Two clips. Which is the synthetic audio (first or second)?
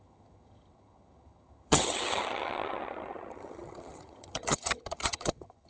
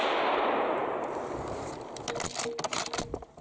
first